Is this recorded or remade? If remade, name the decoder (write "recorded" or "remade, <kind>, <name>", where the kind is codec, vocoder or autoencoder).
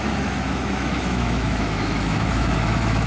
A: remade, autoencoder, DAC-VAE